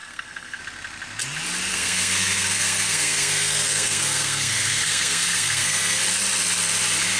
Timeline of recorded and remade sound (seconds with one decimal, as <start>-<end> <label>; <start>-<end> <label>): 0.0-0.6 remade; 0.6-1.7 recorded; 1.7-6.0 remade; 6.0-7.2 recorded

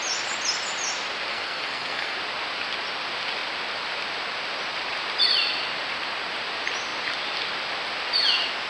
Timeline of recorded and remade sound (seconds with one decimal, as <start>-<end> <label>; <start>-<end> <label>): 0.0-1.3 recorded; 1.3-2.2 remade; 2.2-8.7 recorded

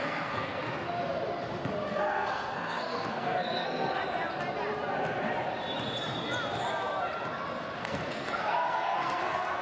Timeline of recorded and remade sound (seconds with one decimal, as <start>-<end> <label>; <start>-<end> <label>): 0.0-0.6 remade; 0.6-1.9 recorded; 1.9-4.0 remade; 4.0-7.8 recorded; 7.8-9.6 remade

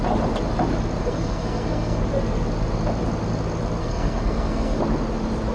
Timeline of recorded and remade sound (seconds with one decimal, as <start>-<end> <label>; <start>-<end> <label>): 0.0-1.0 recorded; 1.0-2.0 remade; 2.0-3.8 recorded; 3.8-4.8 remade; 4.8-5.5 recorded

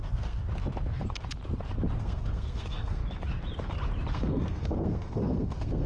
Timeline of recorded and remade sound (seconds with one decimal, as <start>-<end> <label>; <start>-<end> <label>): 0.0-0.4 remade; 0.4-2.0 recorded; 2.0-3.0 remade; 3.0-4.1 recorded; 4.1-5.9 remade

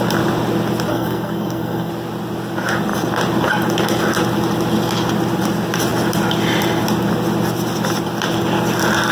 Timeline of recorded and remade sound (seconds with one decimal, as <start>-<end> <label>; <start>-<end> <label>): 0.0-0.9 recorded; 0.9-1.9 remade; 1.9-9.1 recorded